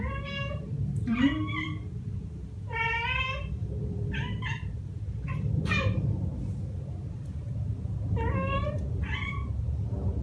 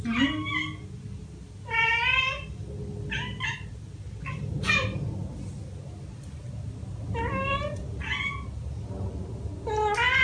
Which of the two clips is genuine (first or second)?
second